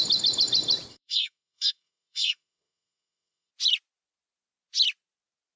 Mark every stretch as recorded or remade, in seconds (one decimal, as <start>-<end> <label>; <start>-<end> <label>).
0.0-0.9 recorded; 0.9-3.5 remade; 3.5-5.6 recorded